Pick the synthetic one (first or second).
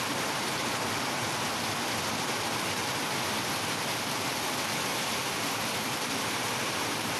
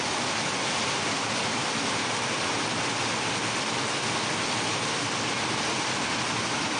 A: first